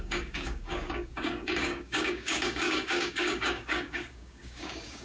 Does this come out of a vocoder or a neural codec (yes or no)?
yes